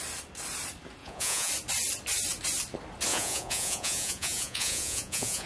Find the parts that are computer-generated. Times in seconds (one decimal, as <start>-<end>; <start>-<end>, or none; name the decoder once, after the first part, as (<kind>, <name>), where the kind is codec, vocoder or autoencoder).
1.0-1.5 (vocoder, Vocos); 3.1-5.5